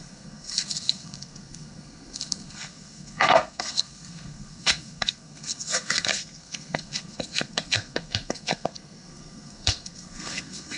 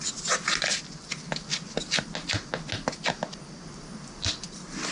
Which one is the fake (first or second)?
first